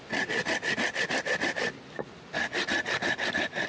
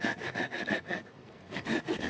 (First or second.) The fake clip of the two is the second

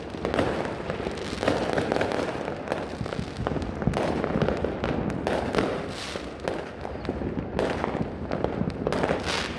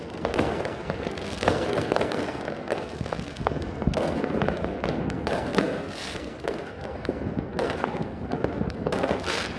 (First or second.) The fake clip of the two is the second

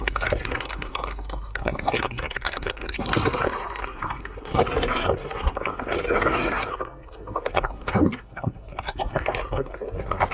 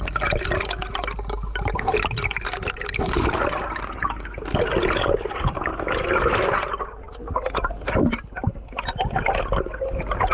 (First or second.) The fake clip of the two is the first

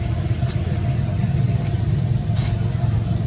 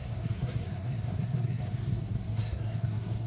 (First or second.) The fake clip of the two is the second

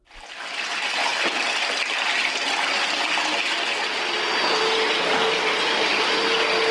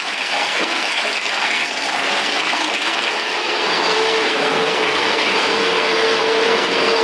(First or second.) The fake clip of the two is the second